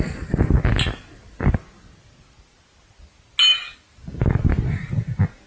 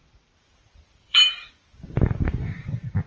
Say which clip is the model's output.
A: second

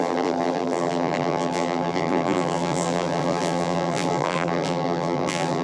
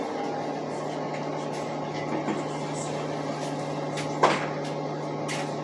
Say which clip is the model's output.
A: first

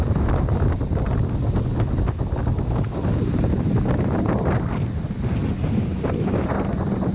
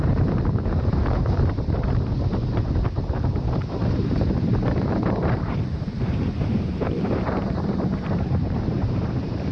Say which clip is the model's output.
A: second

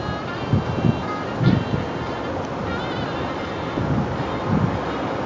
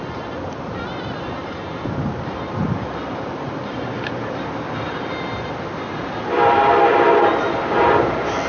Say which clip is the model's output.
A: second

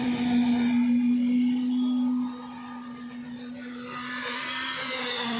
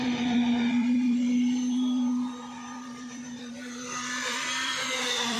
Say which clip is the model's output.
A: second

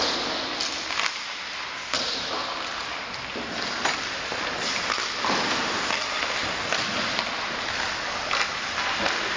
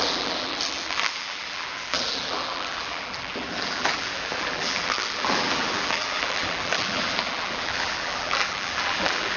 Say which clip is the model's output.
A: second